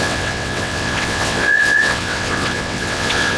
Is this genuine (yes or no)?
no